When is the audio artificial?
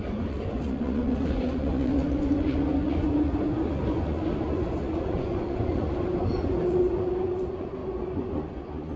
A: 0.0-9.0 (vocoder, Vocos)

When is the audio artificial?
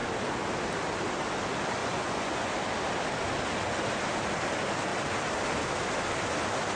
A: 1.8-2.5 (vocoder, Vocos)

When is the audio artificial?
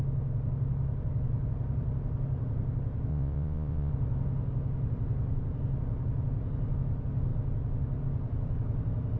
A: 3.1-3.9 (vocoder, Vocos)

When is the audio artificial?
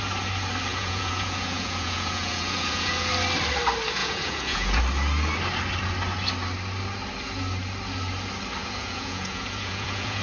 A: 0.7-3.1 (vocoder, Vocos); 4.0-4.8; 8.6-10.2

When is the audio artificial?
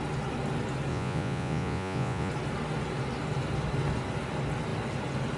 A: 0.9-2.3 (vocoder, Vocos)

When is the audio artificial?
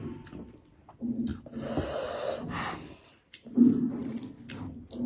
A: none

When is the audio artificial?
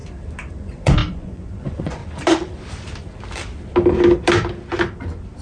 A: 0.5-2.0 (vocoder, Vocos)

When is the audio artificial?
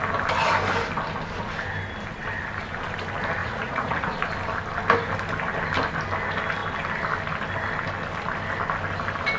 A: 3.4-4.1 (vocoder, Vocos)